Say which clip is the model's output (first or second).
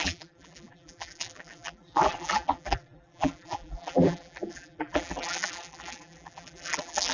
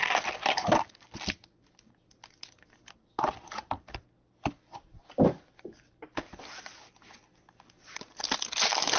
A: first